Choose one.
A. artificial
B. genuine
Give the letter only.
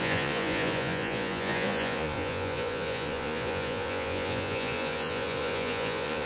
A